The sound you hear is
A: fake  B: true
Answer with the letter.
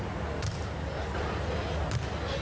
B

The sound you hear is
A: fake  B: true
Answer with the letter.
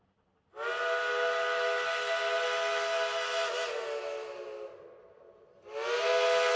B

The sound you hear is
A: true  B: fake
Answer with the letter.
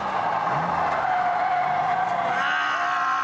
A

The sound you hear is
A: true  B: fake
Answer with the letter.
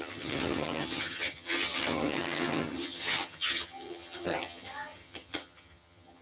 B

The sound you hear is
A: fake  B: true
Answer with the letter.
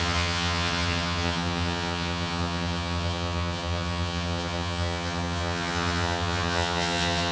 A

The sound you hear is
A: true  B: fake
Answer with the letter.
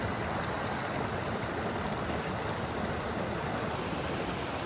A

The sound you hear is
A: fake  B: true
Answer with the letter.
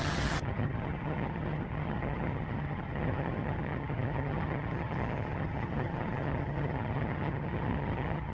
A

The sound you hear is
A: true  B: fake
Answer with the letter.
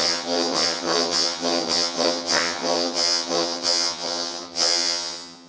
B